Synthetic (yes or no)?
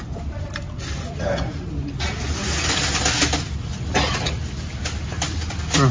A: no